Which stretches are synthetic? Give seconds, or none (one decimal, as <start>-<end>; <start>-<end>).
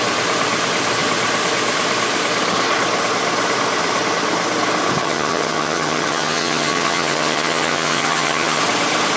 5.0-8.6